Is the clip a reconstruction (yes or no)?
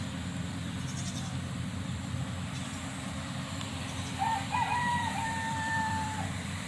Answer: yes